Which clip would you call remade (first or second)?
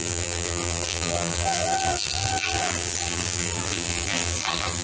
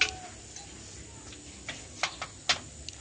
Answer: first